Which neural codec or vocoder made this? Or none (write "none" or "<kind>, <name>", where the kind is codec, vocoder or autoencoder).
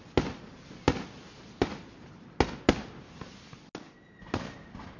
none